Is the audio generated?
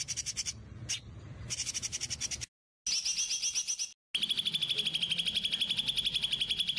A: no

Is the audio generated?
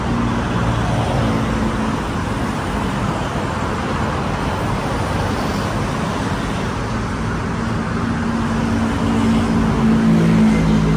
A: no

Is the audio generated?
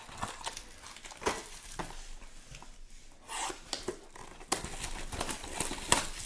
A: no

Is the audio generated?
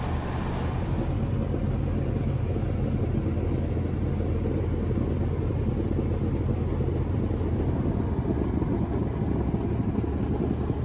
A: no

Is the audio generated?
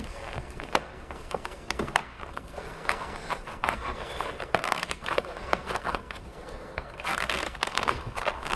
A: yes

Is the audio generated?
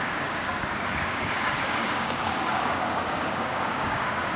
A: yes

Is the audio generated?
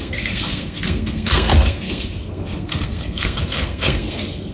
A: yes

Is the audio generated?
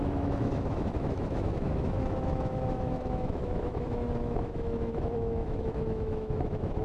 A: yes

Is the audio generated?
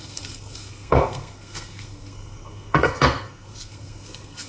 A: yes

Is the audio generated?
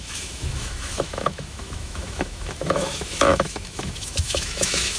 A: yes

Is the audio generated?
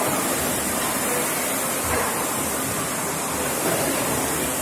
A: no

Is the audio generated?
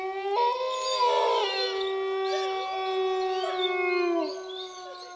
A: no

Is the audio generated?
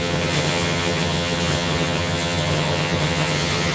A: yes